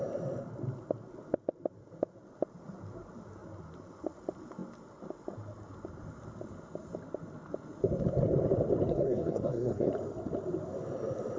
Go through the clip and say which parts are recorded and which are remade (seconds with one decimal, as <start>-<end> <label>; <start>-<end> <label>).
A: 0.0-8.9 recorded; 8.9-9.9 remade; 9.9-11.4 recorded